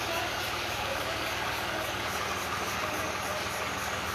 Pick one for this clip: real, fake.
fake